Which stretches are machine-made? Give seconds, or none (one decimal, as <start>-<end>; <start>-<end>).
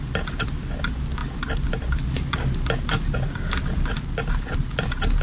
none